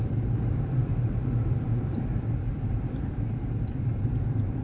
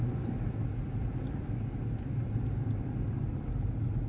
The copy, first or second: first